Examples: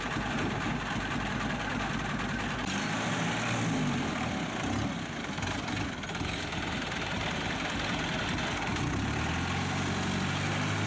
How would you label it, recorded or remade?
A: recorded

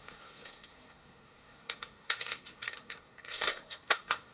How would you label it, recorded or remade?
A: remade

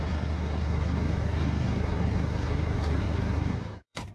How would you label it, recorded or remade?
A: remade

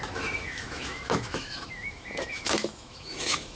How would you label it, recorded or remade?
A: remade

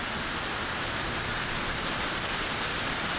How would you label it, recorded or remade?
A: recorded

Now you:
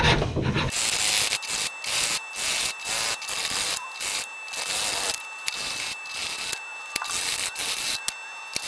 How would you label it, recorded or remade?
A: recorded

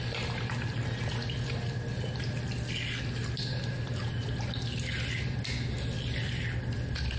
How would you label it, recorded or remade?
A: recorded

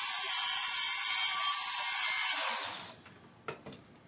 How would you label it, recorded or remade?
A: recorded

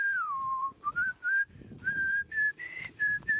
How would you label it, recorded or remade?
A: remade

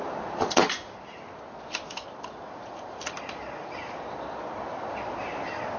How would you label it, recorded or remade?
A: recorded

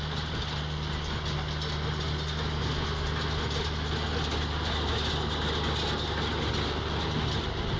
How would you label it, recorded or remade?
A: recorded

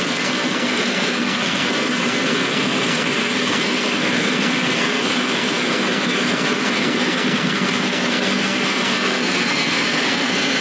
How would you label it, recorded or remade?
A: remade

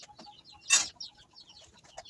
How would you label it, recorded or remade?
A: recorded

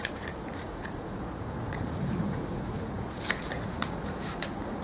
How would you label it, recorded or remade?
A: remade